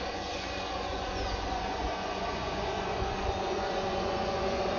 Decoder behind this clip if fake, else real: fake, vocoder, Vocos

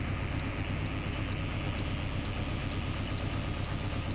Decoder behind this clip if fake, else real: real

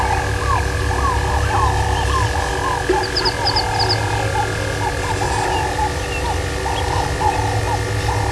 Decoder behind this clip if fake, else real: real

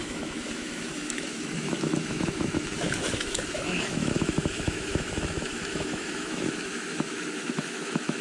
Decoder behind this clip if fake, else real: fake, autoencoder, DAC-VAE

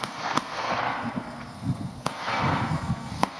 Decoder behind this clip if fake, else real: fake, codec, SNAC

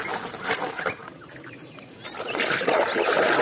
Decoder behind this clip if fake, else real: real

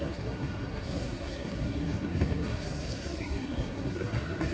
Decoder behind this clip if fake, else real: fake, codec, SNAC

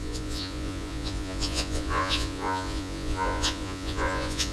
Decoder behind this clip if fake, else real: fake, vocoder, Vocos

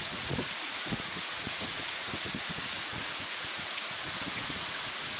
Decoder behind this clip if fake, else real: fake, vocoder, Vocos